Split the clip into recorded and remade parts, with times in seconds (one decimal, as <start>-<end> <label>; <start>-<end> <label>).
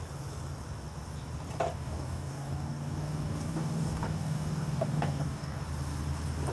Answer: 0.0-1.7 recorded; 1.7-5.6 remade; 5.6-6.5 recorded